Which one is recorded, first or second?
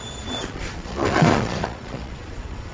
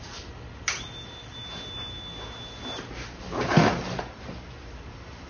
second